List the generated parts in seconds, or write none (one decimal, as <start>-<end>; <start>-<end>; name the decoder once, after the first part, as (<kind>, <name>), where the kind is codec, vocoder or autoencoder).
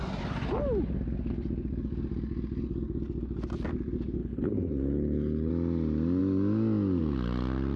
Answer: 4.2-5.5 (codec, HILCodec)